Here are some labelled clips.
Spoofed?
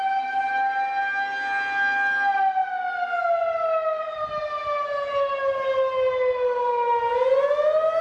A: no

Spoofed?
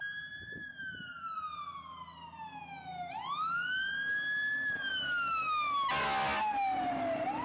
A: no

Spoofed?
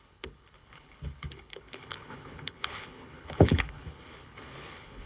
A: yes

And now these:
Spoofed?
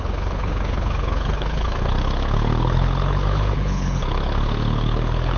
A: yes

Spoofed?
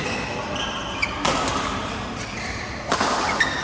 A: no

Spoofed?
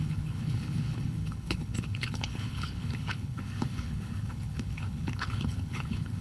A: yes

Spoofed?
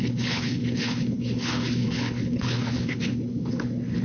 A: yes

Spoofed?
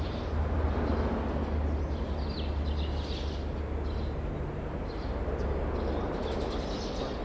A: no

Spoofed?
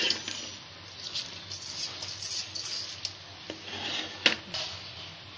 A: no